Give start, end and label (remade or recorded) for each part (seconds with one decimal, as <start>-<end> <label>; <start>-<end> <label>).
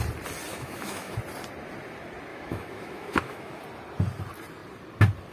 0.0-0.5 recorded; 0.5-1.2 remade; 1.2-2.3 recorded; 2.3-3.6 remade; 3.6-5.3 recorded